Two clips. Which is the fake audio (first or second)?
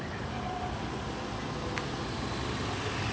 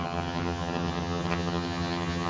second